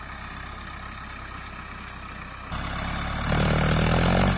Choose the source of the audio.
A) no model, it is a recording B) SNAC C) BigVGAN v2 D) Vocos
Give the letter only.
A